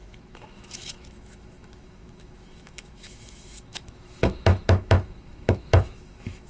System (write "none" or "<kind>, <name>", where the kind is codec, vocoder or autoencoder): autoencoder, DAC-VAE